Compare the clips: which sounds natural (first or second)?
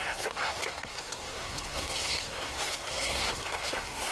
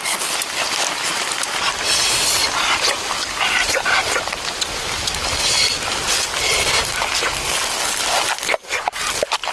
second